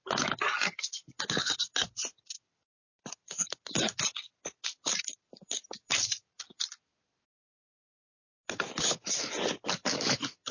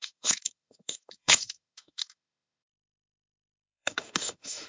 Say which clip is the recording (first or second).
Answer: first